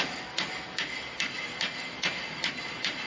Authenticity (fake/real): real